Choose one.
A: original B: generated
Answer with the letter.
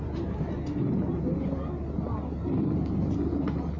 A